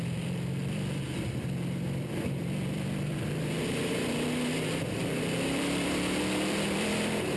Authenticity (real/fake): fake